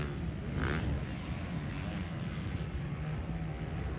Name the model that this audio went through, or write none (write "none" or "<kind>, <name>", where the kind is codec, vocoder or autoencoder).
none